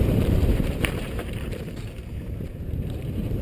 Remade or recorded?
remade